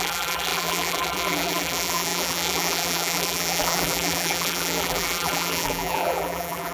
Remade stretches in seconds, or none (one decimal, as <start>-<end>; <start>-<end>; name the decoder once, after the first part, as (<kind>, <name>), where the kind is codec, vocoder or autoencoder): 0.0-6.7 (vocoder, BigVGAN v2)